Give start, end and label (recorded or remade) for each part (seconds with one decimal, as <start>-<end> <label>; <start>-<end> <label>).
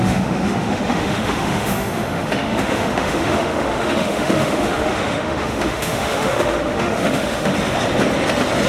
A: 0.0-7.5 remade; 7.5-8.7 recorded